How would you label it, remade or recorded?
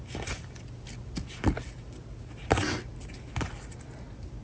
recorded